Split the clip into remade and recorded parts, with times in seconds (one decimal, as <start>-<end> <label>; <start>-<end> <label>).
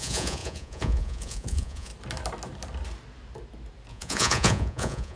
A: 0.0-1.9 remade; 1.9-3.9 recorded; 3.9-5.2 remade